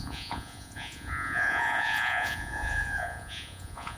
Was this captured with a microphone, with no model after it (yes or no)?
no